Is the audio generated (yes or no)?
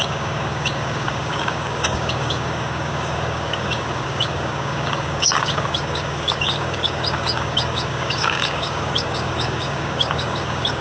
yes